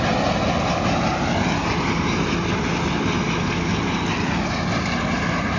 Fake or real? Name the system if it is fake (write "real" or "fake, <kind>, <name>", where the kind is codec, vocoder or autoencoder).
real